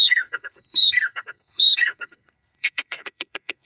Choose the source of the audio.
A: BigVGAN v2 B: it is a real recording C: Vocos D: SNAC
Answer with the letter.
D